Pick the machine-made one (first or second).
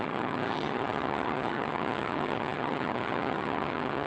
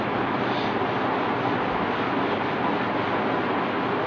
first